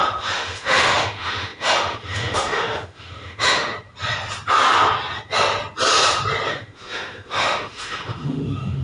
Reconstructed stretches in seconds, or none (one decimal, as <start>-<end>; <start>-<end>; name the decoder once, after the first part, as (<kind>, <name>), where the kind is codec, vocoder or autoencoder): 0.0-3.7 (autoencoder, DAC-VAE); 6.5-8.8